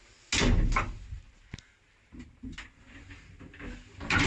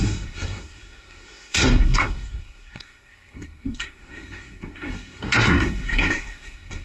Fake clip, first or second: second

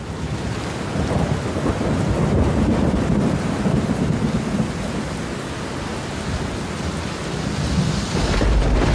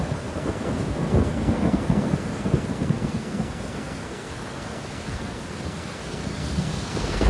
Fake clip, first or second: second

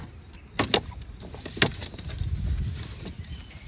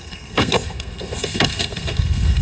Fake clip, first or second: second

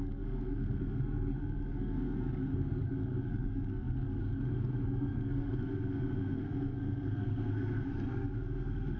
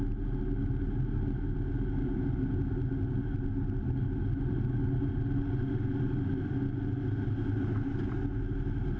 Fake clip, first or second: first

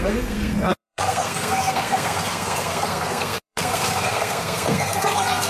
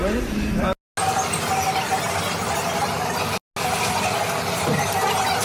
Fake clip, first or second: first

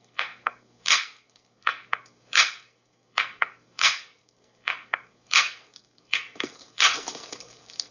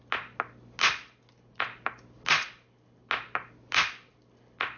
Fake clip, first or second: first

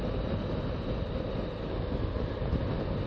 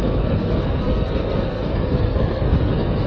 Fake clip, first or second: second